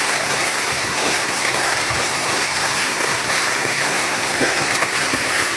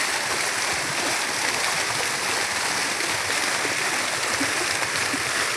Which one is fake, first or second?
first